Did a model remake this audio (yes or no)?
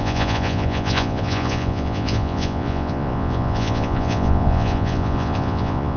yes